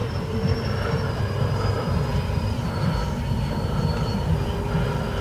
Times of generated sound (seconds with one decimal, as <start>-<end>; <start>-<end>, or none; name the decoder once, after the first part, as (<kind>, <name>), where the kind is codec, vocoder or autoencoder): 0.0-5.2 (vocoder, BigVGAN v2)